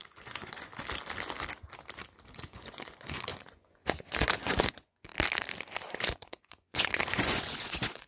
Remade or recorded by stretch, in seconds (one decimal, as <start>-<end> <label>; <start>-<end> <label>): 0.0-0.7 remade; 0.7-2.3 recorded; 2.3-5.1 remade; 5.1-5.9 recorded; 5.9-8.1 remade

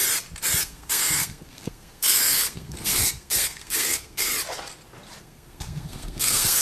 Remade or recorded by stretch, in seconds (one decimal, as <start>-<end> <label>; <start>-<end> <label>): 0.0-0.6 recorded; 0.6-4.3 remade; 4.3-5.2 recorded; 5.2-6.6 remade

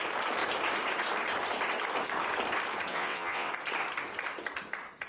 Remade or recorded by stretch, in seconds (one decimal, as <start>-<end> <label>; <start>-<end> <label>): 0.0-2.9 recorded; 2.9-3.5 remade; 3.5-5.1 recorded

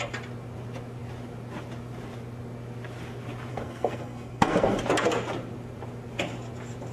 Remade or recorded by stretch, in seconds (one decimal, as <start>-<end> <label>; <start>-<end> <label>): 0.0-3.5 recorded; 3.5-4.8 remade; 4.8-6.9 recorded

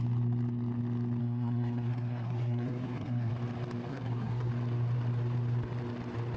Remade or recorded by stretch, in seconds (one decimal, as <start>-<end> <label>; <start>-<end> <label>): 0.0-1.2 recorded; 1.2-3.3 remade; 3.3-3.9 recorded; 3.9-4.5 remade; 4.5-6.4 recorded

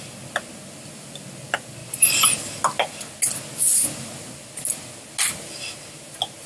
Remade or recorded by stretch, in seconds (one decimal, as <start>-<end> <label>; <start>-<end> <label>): 0.0-6.5 recorded

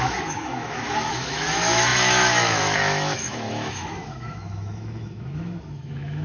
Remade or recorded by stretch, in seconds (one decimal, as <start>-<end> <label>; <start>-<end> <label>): 0.0-6.2 remade

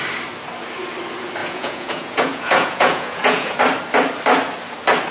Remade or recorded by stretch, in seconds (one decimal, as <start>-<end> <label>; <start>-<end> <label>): 0.0-1.4 recorded; 1.4-3.6 remade; 3.6-5.1 recorded